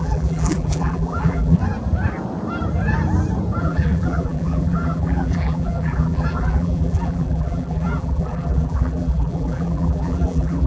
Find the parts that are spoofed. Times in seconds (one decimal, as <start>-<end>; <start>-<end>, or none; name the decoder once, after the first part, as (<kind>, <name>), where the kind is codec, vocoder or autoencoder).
0.0-1.6 (vocoder, BigVGAN v2); 3.6-10.7